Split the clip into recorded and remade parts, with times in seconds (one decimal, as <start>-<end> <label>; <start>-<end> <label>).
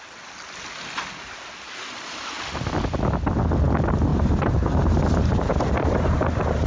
0.0-4.1 recorded; 4.1-5.0 remade; 5.0-5.5 recorded; 5.5-6.7 remade